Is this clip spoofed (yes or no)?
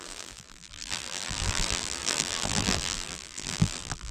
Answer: yes